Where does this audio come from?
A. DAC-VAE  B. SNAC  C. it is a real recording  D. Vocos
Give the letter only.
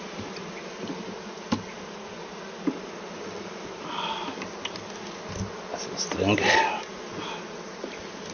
C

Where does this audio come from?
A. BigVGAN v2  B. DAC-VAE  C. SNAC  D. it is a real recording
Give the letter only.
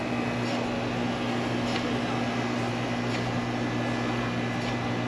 D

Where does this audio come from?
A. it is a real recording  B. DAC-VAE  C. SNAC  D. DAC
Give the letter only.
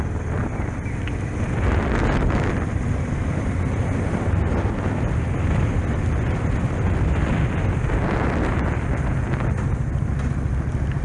A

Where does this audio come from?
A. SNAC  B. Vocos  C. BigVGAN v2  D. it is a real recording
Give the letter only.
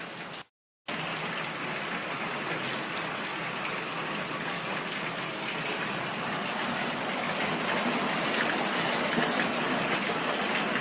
D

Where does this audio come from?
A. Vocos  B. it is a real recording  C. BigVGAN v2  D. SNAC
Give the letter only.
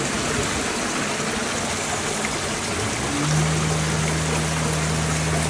B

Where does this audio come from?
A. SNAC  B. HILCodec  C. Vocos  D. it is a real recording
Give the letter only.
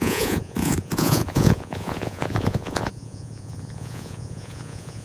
C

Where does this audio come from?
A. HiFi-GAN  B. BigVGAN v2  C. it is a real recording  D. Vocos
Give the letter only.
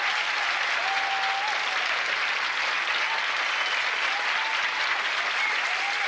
C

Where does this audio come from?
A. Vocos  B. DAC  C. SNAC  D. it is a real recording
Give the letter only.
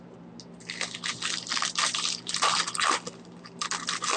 D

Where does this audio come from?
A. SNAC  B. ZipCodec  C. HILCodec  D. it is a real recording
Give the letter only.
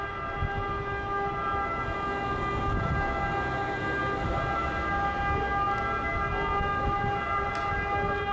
D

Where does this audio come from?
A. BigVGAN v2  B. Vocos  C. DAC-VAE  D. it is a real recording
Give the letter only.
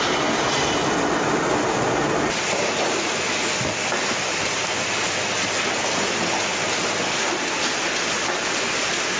D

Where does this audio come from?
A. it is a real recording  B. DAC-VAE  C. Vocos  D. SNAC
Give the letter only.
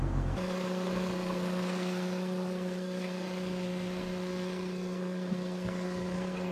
D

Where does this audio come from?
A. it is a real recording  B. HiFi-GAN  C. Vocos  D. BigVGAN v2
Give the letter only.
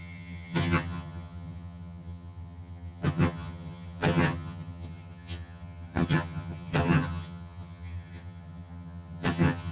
B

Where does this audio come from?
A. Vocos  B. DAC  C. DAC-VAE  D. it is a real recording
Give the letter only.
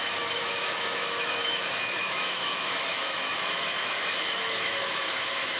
C